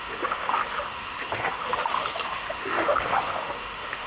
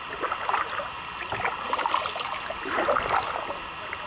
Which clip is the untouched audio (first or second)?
second